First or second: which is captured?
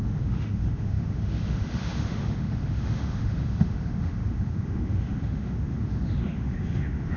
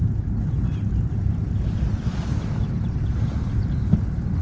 second